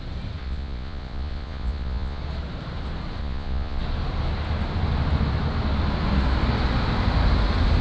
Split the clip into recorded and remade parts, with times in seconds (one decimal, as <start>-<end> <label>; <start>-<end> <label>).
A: 0.0-0.4 recorded; 0.4-2.2 remade; 2.2-3.2 recorded; 3.2-3.8 remade; 3.8-7.8 recorded